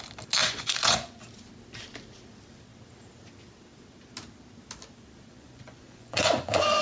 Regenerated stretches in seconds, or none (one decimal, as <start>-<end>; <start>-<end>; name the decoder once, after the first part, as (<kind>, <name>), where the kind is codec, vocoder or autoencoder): 0.4-1.2 (vocoder, Vocos); 5.3-6.8